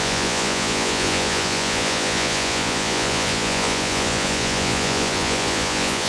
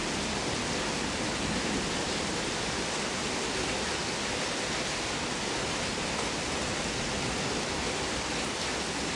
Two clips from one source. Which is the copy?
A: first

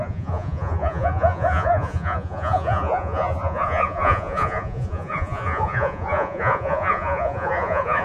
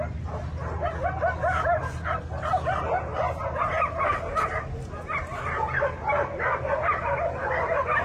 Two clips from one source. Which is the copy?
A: first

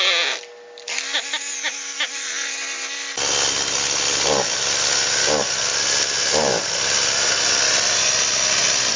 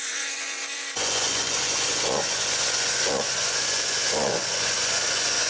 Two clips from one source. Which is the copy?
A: second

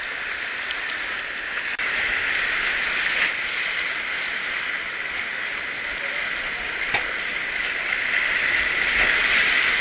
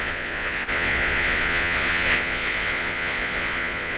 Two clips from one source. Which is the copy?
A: second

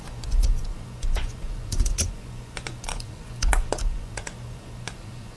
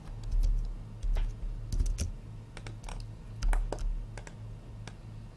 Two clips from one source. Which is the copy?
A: first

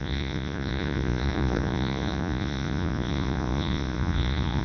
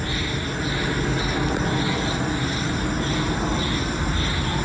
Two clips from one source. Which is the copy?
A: first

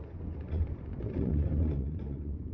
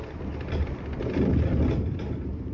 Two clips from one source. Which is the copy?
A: first